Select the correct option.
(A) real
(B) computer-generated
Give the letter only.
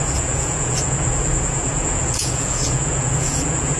B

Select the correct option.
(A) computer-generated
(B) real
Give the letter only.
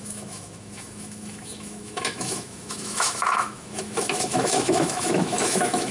A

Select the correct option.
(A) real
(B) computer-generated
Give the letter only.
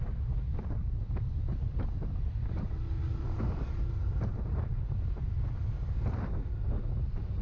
A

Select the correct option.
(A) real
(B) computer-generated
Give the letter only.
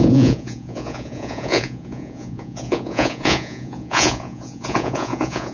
B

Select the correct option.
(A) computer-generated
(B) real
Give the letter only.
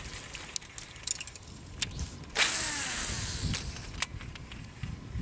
B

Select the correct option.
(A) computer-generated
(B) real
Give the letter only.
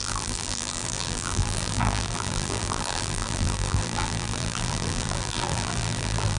A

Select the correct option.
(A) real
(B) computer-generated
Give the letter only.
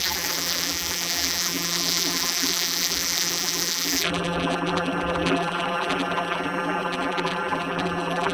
B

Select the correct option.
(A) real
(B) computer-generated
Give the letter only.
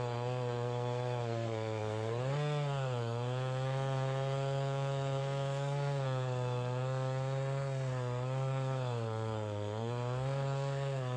B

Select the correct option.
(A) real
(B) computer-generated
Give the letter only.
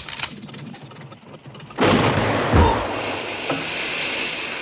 A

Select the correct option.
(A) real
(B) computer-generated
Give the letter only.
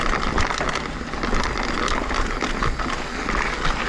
A